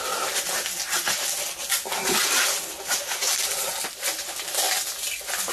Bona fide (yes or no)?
yes